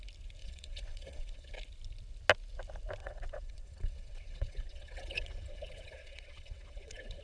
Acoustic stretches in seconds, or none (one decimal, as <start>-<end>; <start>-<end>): 0.0-0.4; 1.5-3.0